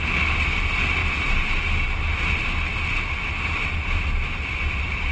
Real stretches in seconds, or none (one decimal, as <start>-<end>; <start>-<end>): 0.0-1.0; 1.6-3.6; 4.5-5.1